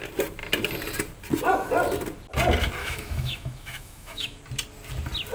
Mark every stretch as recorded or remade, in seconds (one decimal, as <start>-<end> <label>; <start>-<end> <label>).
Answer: 0.0-2.8 recorded; 2.8-4.4 remade; 4.4-5.3 recorded